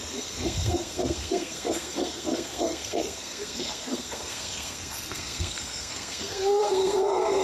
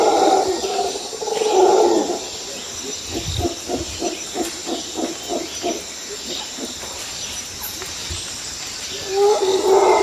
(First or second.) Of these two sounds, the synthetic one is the first